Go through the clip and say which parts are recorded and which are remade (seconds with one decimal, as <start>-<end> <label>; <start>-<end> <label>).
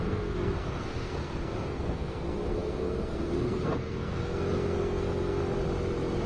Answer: 0.0-5.4 remade; 5.4-6.3 recorded